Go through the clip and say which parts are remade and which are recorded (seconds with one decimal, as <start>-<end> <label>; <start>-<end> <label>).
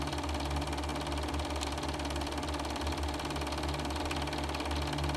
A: 0.0-5.2 recorded